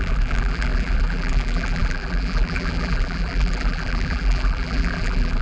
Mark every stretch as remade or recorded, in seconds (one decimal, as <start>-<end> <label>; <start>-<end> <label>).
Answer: 0.0-5.4 remade